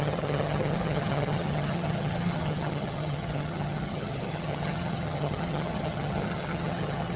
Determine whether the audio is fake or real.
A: fake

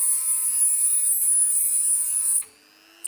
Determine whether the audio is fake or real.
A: real